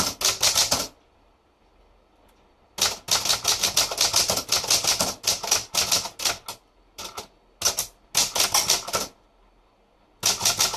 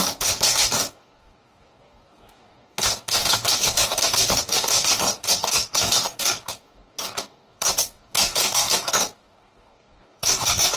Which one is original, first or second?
first